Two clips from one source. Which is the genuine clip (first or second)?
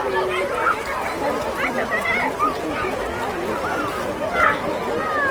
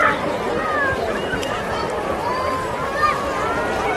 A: first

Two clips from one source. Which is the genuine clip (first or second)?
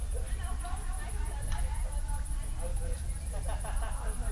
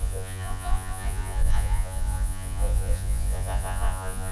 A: first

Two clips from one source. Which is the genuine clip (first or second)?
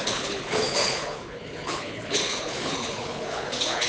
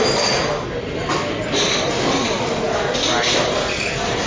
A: second